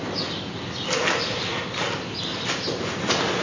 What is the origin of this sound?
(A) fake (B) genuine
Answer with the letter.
B